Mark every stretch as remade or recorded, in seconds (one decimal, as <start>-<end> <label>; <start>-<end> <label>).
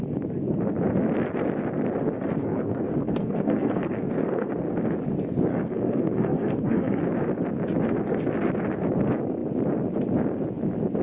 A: 0.0-2.4 recorded; 2.4-4.5 remade; 4.5-5.5 recorded; 5.5-7.0 remade; 7.0-11.0 recorded